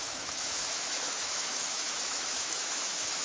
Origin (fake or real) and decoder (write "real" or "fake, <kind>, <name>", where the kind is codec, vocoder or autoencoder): fake, autoencoder, DAC-VAE